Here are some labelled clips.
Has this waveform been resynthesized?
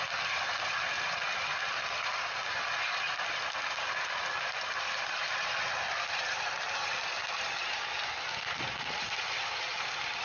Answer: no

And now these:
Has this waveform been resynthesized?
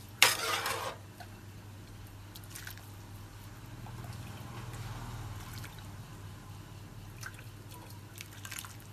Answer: no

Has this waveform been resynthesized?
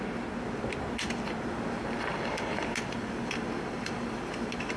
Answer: no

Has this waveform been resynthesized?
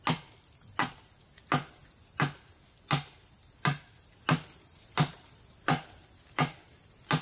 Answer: no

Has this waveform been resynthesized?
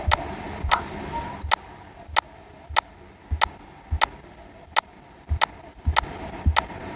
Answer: no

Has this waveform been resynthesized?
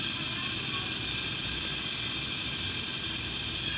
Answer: no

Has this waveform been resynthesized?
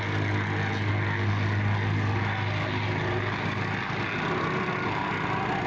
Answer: no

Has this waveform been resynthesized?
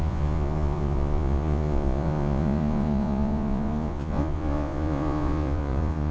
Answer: yes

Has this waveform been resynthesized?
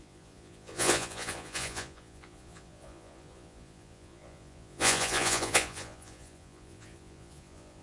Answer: yes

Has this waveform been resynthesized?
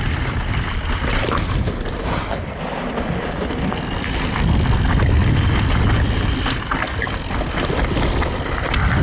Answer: no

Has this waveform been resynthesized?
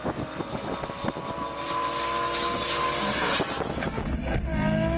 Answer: no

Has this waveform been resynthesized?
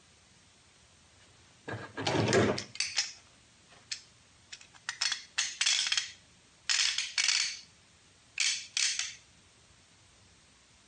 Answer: no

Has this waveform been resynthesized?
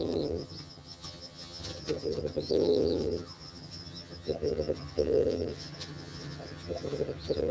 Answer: yes